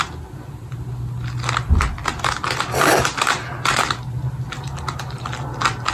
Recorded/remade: recorded